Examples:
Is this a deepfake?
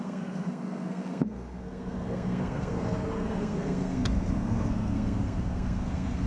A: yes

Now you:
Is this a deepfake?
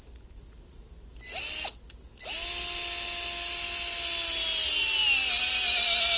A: no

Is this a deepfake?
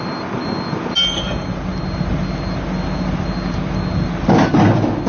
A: no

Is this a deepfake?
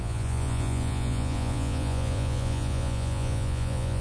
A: yes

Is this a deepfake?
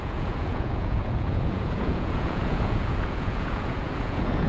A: yes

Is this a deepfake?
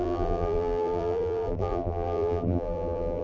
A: yes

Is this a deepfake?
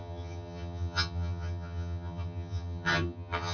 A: yes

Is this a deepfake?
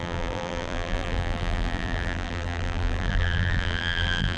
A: yes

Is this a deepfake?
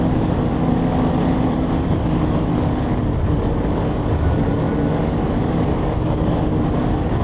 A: yes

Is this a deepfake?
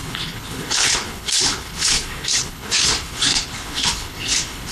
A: yes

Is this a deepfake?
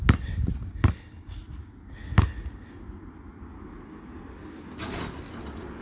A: no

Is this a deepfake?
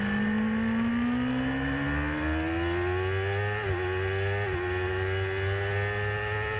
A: no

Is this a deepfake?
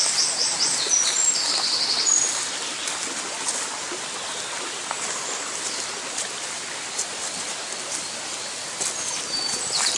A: no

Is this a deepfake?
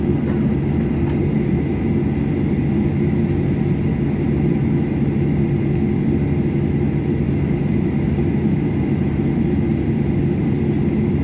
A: no